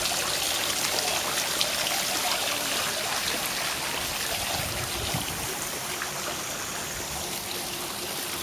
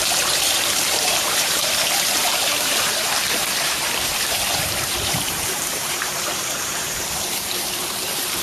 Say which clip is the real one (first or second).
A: first